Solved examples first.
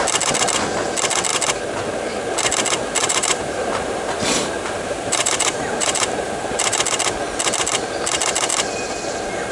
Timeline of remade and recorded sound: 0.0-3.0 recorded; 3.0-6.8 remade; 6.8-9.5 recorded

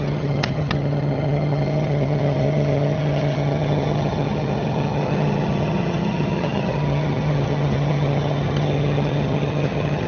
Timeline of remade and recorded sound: 0.0-10.1 remade

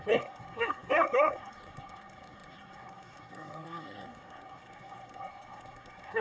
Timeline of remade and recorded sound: 0.0-6.2 remade

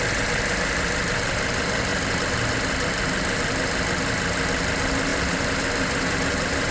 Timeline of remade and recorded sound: 0.0-5.1 recorded; 5.1-6.7 remade

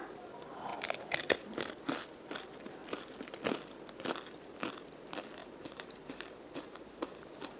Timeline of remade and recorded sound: 0.0-5.4 recorded; 5.4-7.6 remade

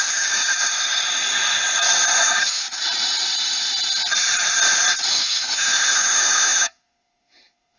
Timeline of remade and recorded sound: 0.0-0.4 remade; 0.4-2.2 recorded; 2.2-2.6 remade; 2.6-5.1 recorded; 5.1-7.8 remade

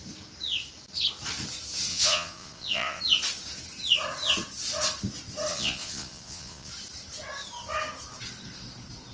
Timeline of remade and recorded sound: 0.0-1.9 recorded; 1.9-3.0 remade; 3.0-5.5 recorded; 5.5-6.7 remade; 6.7-9.1 recorded

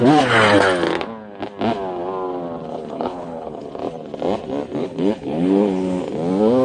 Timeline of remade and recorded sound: 0.0-2.7 recorded; 2.7-3.7 remade; 3.7-4.8 recorded; 4.8-6.0 remade; 6.0-6.6 recorded